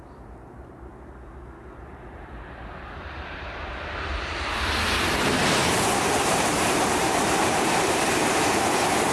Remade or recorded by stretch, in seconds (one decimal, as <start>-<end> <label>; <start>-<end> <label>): 0.0-0.9 remade; 0.9-1.8 recorded; 1.8-4.1 remade; 4.1-5.3 recorded; 5.3-9.1 remade